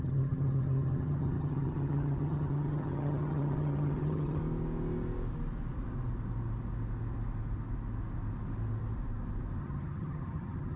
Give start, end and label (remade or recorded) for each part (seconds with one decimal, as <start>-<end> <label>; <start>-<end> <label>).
0.0-4.4 remade; 4.4-9.6 recorded; 9.6-10.8 remade